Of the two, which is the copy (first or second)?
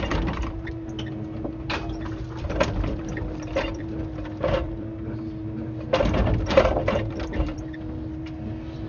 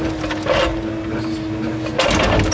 first